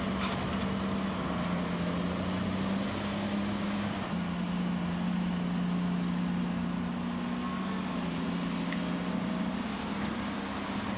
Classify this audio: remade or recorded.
recorded